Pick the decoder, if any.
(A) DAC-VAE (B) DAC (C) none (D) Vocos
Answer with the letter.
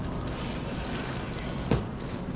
C